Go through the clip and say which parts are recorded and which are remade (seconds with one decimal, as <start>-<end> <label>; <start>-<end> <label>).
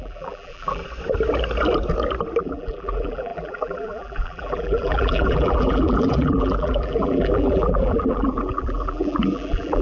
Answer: 0.0-0.8 remade; 0.8-2.4 recorded; 2.4-9.8 remade